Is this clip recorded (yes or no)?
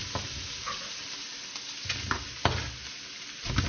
yes